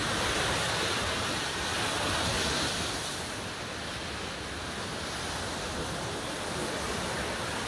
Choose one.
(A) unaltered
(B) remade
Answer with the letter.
A